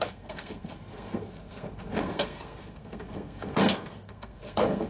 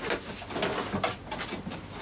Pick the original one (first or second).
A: second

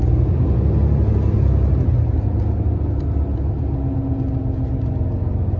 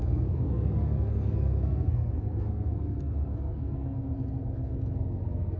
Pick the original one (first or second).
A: first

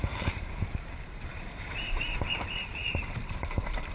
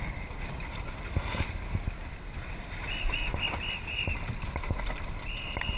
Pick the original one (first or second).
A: second